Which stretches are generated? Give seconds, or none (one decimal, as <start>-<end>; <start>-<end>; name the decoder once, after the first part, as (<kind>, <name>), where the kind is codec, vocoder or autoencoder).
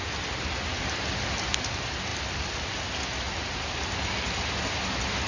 none